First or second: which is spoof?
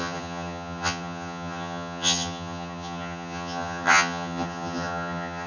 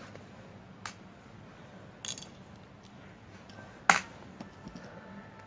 first